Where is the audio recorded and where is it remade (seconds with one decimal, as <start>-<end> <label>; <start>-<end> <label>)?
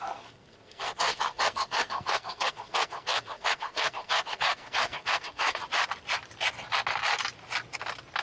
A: 0.0-5.6 remade; 5.6-8.2 recorded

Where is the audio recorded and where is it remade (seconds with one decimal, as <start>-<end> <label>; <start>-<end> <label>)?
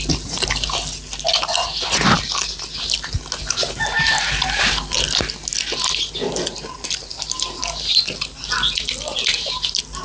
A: 0.0-10.0 recorded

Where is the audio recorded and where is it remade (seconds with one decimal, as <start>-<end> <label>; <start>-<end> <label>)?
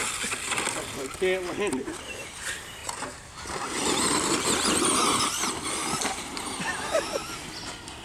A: 0.0-2.8 recorded; 2.8-3.4 remade; 3.4-5.8 recorded; 5.8-7.0 remade; 7.0-8.0 recorded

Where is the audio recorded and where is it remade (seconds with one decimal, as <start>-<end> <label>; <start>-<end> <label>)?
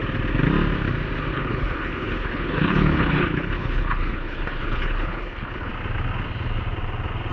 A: 0.0-1.3 recorded; 1.3-5.7 remade; 5.7-7.3 recorded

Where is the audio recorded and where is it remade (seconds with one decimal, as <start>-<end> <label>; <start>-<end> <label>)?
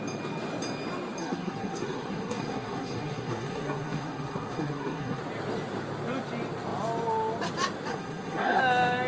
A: 0.0-1.2 recorded; 1.2-5.2 remade; 5.2-7.9 recorded; 7.9-8.6 remade; 8.6-9.1 recorded